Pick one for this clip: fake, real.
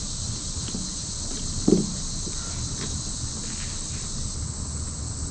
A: real